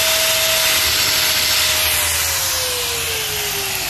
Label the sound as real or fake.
real